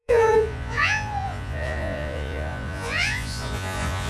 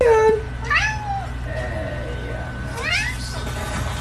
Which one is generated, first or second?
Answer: first